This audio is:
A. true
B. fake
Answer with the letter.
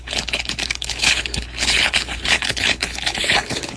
B